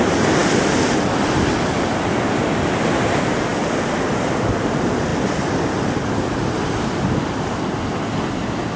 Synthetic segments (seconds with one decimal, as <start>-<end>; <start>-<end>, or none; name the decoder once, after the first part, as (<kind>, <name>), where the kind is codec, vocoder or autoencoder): none